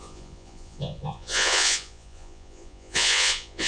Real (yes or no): no